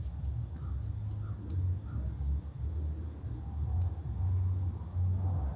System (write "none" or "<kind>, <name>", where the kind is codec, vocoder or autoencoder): none